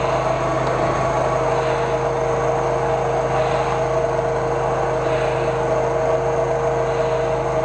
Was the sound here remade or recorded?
recorded